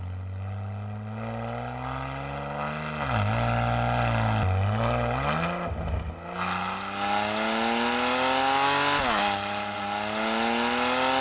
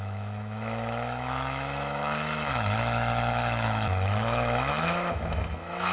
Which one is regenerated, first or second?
second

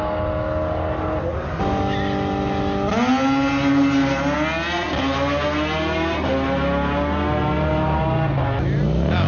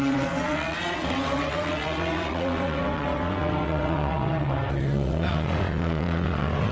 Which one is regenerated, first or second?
second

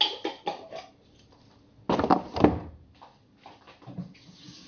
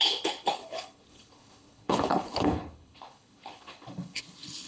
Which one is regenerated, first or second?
second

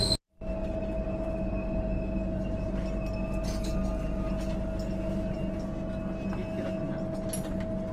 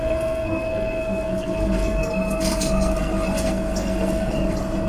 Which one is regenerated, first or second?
second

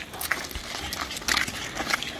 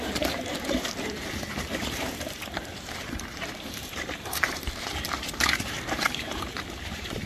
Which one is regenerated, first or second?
second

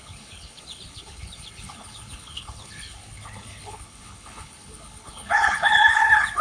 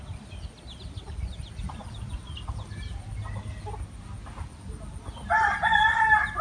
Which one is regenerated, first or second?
first